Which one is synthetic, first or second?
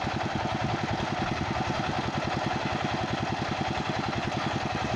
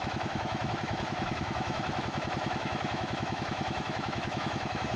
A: second